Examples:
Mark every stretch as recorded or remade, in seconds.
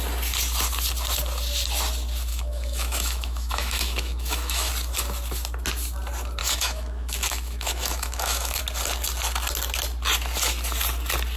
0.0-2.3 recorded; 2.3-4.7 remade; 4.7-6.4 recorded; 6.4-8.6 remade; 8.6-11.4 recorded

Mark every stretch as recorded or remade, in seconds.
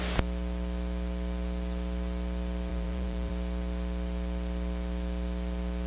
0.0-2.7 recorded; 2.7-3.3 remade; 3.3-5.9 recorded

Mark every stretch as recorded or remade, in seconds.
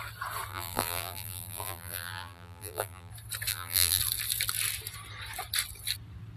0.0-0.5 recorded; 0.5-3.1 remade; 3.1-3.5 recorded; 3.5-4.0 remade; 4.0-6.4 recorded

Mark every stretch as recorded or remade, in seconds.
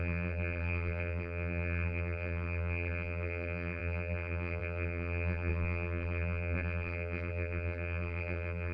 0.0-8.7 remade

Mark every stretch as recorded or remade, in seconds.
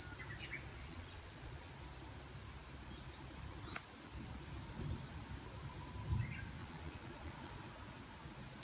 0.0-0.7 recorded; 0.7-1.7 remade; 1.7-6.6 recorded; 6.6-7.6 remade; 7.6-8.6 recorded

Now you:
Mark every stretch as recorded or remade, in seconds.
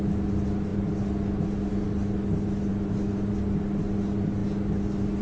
0.0-5.2 recorded